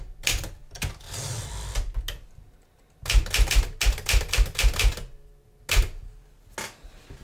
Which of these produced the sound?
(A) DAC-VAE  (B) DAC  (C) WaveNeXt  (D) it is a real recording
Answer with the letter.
D